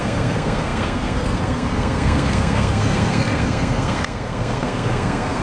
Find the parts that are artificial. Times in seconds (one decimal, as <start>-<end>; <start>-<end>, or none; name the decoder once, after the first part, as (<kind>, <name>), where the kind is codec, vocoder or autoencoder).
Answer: 0.0-5.4 (codec, SNAC)